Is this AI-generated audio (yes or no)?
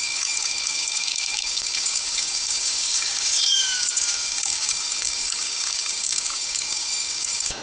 yes